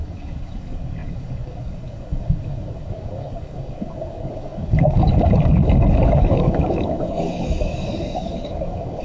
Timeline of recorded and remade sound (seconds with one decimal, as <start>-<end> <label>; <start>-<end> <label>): 0.0-9.0 remade